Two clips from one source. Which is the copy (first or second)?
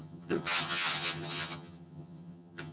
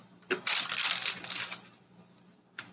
first